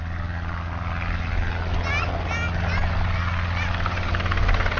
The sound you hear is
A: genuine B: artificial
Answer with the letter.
A